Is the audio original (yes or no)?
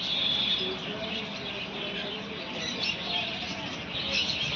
yes